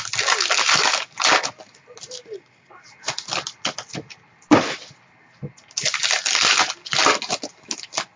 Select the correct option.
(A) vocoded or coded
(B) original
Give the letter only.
B